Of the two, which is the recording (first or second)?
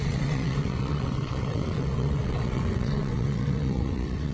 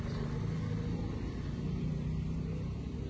second